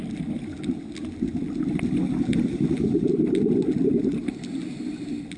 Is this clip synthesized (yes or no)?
no